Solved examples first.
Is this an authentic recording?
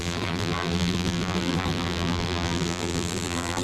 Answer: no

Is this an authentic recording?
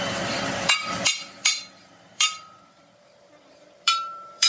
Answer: no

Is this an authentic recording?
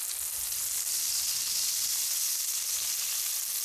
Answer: yes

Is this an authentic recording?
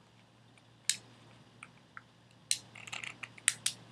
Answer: yes